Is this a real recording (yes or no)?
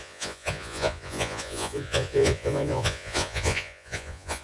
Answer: no